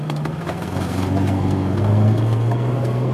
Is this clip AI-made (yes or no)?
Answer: yes